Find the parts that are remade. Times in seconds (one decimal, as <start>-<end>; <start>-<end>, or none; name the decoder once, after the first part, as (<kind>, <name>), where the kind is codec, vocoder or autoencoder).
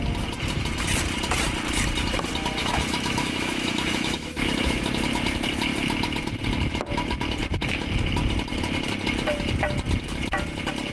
2.6-4.9 (autoencoder, DAC-VAE)